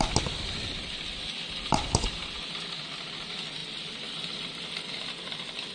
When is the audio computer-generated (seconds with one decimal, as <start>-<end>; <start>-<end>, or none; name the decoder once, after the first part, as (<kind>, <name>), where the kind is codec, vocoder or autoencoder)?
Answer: none